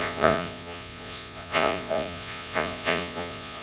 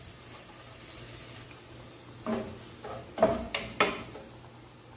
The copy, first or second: first